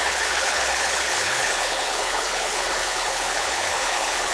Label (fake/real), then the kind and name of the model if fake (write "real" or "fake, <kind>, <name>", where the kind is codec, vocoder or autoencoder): fake, codec, HILCodec